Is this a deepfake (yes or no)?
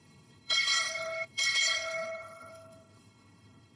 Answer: yes